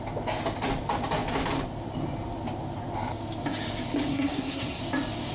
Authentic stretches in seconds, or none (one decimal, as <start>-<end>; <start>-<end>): 0.0-4.1; 4.8-5.3